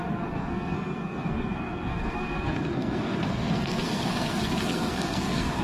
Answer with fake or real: fake